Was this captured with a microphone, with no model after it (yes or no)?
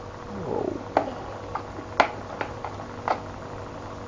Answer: yes